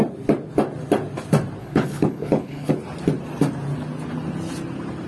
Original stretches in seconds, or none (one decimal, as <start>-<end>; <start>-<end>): 0.0-1.6; 2.7-5.1